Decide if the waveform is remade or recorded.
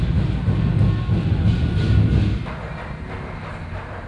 recorded